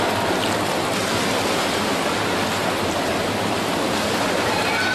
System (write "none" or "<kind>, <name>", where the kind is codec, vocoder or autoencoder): none